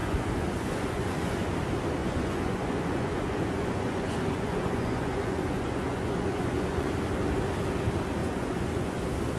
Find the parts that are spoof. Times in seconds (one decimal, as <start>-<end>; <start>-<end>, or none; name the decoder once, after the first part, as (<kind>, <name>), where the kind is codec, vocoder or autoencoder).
0.0-1.5 (vocoder, Vocos); 2.0-6.9; 8.2-9.0